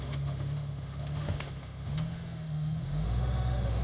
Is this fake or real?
fake